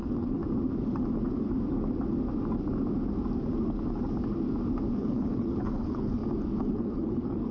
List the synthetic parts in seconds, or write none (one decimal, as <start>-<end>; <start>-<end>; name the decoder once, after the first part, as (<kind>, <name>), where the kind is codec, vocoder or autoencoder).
0.0-0.4 (codec, HILCodec); 4.9-6.2; 6.7-7.5